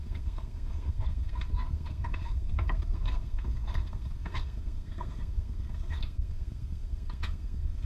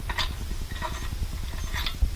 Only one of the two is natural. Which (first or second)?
second